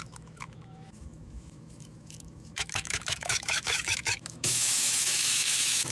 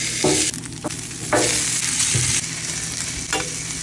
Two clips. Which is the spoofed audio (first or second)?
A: first